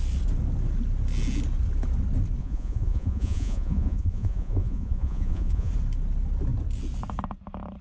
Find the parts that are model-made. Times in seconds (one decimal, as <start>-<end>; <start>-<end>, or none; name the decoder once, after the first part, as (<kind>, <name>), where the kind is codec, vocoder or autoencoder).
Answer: 2.4-5.7 (vocoder, Vocos)